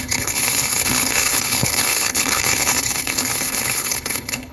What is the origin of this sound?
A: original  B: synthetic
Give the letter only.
B